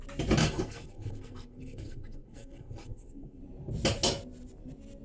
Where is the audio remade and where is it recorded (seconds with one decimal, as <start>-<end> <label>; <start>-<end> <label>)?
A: 0.0-0.4 recorded; 0.4-3.4 remade; 3.4-5.0 recorded